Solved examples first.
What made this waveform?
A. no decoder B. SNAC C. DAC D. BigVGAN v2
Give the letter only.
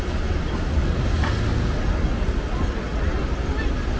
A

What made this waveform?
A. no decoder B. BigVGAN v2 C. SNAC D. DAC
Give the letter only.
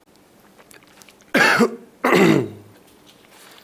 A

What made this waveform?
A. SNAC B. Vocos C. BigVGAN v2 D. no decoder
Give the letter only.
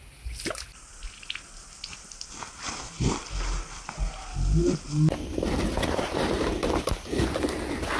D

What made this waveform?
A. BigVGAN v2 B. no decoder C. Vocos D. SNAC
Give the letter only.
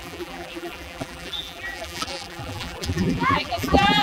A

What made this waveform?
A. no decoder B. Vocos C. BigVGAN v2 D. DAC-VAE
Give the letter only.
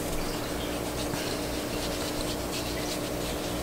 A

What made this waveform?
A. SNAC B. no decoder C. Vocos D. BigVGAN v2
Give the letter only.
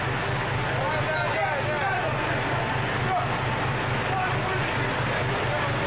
B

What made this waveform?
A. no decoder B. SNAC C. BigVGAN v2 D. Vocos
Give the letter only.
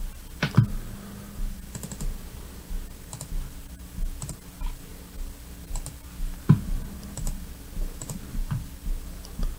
A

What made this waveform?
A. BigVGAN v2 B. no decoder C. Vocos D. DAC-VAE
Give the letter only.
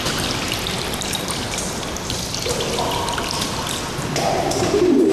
B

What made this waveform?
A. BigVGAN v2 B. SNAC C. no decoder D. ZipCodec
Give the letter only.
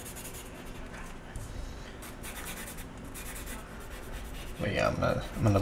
A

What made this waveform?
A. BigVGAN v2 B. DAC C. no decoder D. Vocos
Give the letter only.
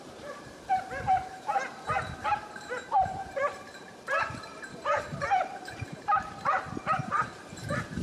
A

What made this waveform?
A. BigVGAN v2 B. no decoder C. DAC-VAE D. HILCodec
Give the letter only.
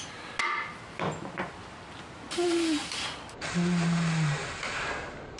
B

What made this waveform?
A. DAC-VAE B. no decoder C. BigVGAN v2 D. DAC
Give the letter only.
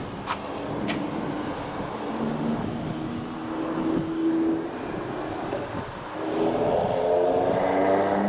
B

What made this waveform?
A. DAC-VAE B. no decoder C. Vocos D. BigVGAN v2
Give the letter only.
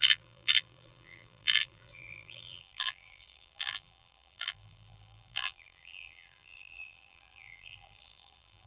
D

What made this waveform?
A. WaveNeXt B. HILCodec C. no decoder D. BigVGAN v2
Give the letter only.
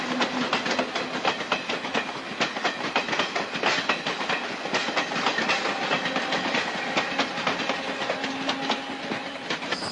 C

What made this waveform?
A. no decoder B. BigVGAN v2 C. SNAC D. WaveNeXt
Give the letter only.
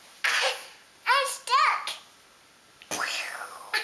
A